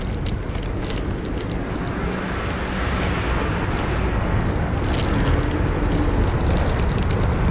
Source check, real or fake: real